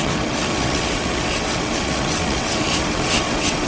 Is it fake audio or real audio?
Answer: fake